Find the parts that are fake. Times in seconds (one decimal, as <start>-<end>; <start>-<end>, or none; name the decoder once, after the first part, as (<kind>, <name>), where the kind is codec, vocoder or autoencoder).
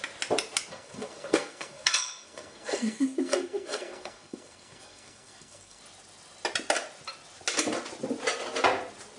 0.7-5.8 (codec, SNAC)